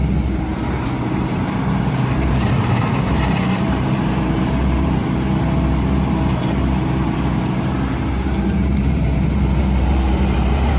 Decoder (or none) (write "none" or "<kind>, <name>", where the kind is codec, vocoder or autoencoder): vocoder, BigVGAN v2